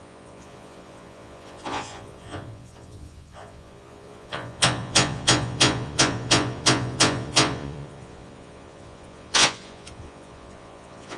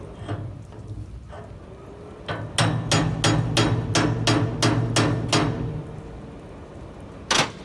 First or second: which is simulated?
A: first